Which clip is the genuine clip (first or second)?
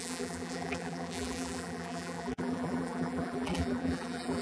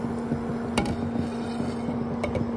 second